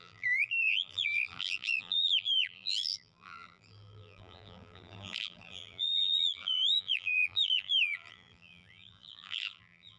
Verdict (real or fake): fake